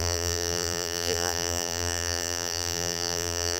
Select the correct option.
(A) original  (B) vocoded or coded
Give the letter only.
B